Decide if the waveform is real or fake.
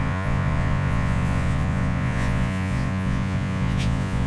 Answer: fake